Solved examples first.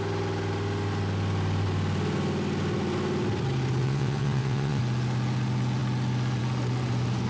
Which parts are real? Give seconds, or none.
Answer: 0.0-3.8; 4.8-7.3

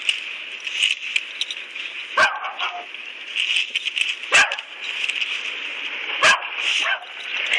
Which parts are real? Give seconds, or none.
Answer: 0.0-7.6

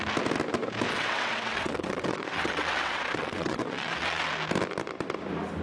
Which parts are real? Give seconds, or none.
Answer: 0.0-0.9; 4.3-5.6

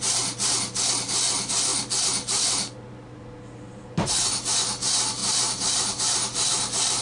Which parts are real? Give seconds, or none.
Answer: 0.0-5.2